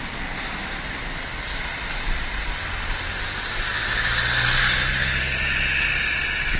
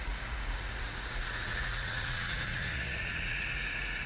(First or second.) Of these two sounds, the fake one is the second